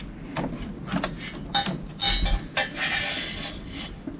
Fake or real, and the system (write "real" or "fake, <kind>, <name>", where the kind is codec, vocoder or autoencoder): real